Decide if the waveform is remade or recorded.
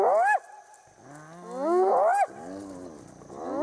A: recorded